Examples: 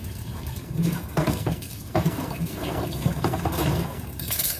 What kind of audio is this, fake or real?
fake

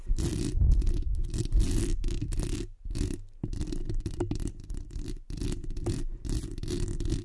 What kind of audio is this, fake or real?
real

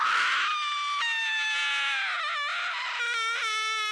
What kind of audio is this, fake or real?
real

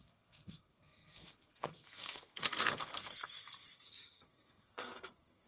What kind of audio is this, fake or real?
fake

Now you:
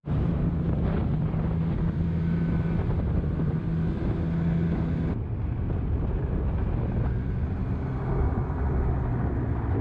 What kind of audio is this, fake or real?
real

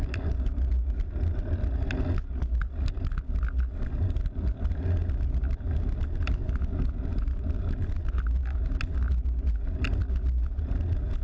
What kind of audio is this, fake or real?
real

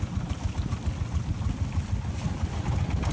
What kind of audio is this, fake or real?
real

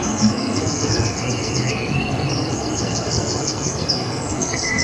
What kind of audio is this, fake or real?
fake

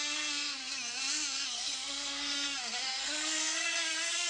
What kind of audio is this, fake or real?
fake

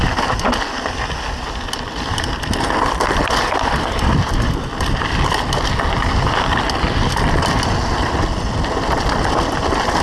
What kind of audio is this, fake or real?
real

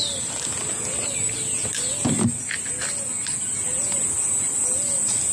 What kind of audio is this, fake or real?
real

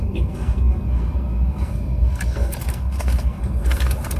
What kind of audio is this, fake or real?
fake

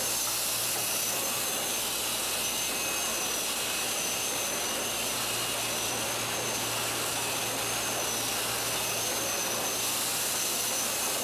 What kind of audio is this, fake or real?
real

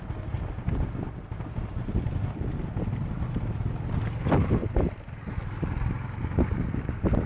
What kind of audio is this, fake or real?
real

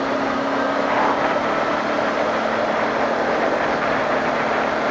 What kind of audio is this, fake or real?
real